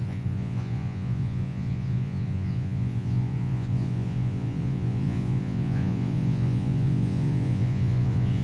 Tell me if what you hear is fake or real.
fake